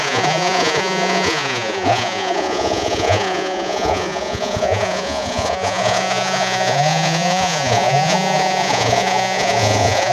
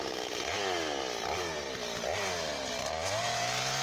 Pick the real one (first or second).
second